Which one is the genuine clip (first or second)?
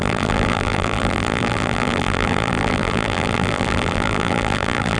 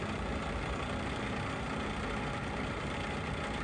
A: second